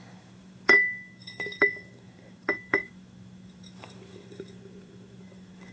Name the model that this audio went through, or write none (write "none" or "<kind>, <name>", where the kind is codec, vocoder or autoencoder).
autoencoder, DAC-VAE